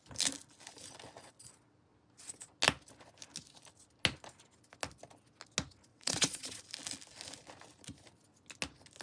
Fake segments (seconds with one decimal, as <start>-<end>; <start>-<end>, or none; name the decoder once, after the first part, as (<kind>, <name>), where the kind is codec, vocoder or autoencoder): 5.9-6.6 (vocoder, WaveNeXt)